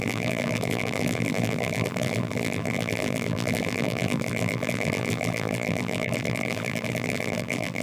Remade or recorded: remade